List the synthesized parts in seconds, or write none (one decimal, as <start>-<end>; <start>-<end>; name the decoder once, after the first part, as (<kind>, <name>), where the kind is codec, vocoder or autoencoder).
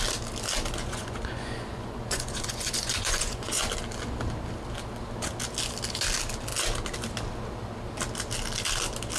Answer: 0.8-3.7 (vocoder, Vocos)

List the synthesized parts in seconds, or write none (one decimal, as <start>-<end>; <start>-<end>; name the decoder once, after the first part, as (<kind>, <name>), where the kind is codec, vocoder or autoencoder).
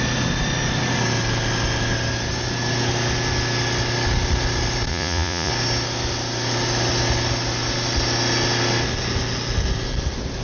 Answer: 4.9-5.5 (vocoder, Vocos)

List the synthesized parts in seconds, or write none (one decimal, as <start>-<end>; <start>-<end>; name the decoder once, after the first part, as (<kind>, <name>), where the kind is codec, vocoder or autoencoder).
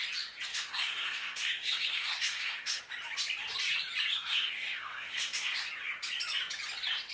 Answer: 0.5-2.8 (codec, SNAC); 4.1-5.7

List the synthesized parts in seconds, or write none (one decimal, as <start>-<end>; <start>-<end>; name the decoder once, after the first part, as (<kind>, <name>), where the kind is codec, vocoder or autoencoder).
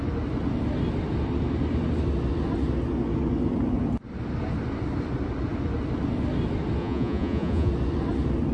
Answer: 6.8-7.7 (vocoder, Vocos)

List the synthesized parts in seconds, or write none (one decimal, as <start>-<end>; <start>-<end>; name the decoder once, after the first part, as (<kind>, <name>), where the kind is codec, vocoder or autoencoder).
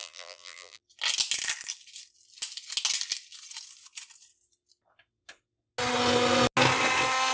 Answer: 0.0-0.8 (vocoder, BigVGAN v2)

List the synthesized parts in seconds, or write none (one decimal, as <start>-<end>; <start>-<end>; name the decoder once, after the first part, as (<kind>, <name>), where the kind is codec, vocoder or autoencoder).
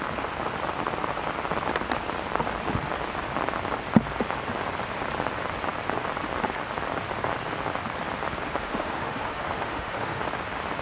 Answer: 8.6-10.2 (autoencoder, DAC-VAE)